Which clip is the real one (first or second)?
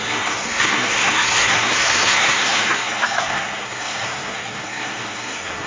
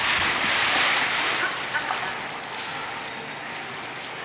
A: second